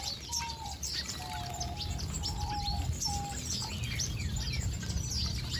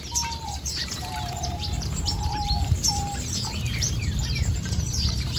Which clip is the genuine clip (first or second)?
first